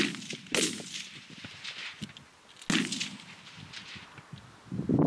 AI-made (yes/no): no